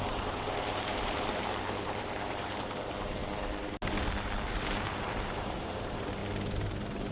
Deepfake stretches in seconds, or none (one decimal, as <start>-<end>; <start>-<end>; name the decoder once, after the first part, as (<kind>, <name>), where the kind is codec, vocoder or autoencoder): 0.0-3.2 (vocoder, BigVGAN v2); 4.5-6.2